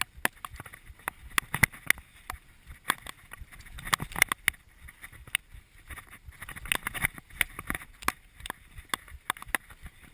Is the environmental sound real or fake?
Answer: real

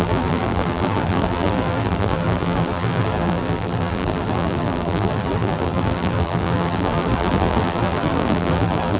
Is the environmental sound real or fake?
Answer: fake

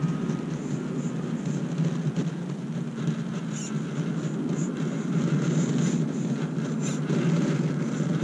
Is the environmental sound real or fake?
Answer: real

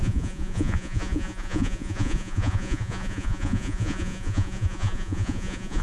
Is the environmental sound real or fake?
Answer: fake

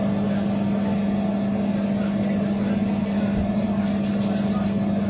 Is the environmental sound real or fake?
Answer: real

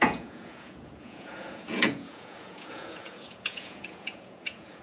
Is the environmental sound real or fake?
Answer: fake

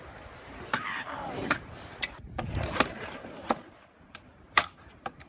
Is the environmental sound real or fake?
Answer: fake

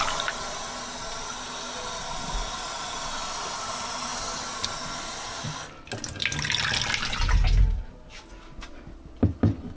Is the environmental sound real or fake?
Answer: real